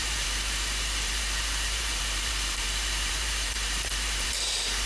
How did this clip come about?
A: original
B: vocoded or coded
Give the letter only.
B